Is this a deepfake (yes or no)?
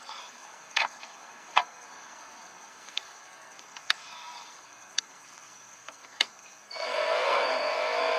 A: yes